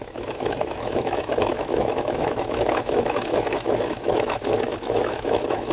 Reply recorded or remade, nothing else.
remade